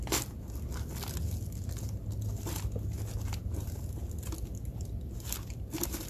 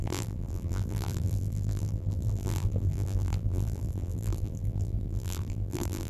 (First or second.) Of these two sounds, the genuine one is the first